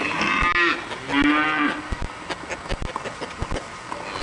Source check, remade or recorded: recorded